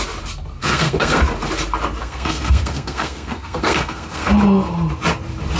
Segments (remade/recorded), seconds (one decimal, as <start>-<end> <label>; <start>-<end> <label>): 0.0-0.6 recorded; 0.6-1.2 remade; 1.2-2.0 recorded; 2.0-4.3 remade; 4.3-5.6 recorded